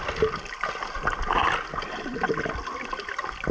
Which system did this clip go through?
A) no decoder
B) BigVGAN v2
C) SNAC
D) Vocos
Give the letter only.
A